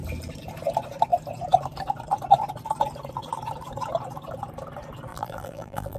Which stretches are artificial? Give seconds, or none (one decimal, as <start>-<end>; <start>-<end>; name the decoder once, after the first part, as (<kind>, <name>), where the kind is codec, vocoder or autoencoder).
5.1-6.0 (vocoder, BigVGAN v2)